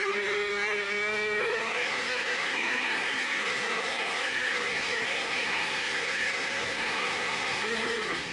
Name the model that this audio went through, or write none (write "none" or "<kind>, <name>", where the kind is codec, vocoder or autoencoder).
codec, SNAC